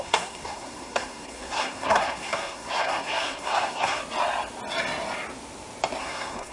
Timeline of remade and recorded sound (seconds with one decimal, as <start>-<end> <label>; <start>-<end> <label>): 0.0-4.0 remade; 4.0-6.0 recorded; 6.0-6.5 remade